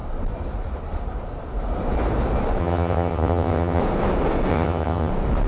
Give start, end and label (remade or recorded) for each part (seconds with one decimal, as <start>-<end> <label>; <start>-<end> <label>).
0.0-2.6 recorded; 2.6-3.8 remade; 3.8-4.5 recorded; 4.5-5.1 remade; 5.1-5.5 recorded